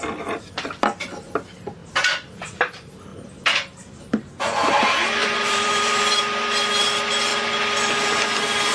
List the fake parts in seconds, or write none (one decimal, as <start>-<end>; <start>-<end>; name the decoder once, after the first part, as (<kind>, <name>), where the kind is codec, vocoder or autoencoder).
1.8-2.6 (vocoder, BigVGAN v2); 5.2-6.2